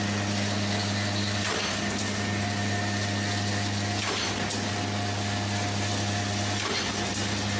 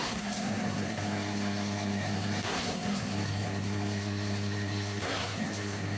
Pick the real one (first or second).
first